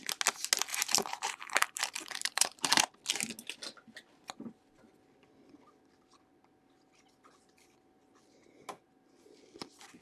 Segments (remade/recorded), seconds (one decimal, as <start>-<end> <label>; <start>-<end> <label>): 0.0-0.7 recorded; 0.7-2.7 remade; 2.7-10.0 recorded